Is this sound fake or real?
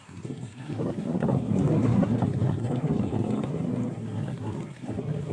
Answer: fake